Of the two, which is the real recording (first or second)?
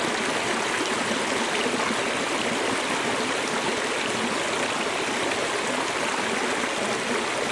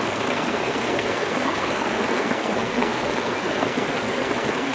first